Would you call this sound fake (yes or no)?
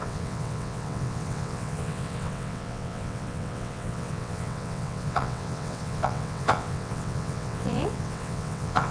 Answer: yes